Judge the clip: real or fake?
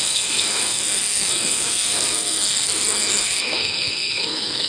fake